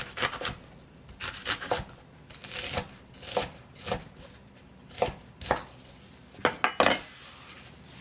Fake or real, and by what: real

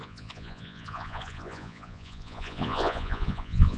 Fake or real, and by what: fake, vocoder, Vocos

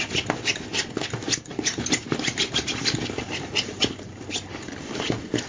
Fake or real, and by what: real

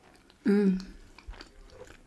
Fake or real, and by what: real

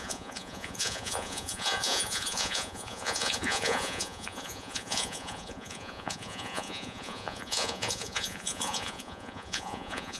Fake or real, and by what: fake, vocoder, Vocos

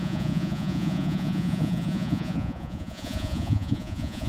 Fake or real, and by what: fake, vocoder, Vocos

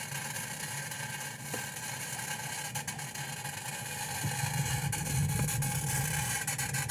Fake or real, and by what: real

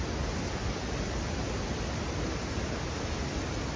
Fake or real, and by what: real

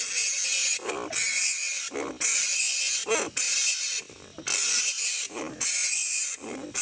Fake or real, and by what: real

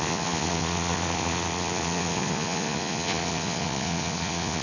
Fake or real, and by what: fake, vocoder, Vocos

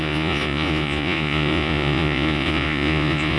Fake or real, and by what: fake, vocoder, Vocos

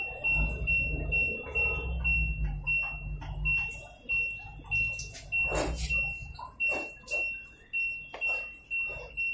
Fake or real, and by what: real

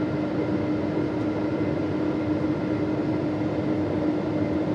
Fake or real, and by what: real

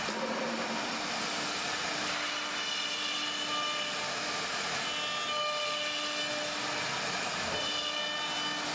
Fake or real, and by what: real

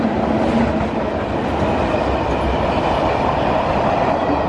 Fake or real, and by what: real